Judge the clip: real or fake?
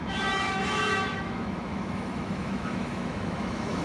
fake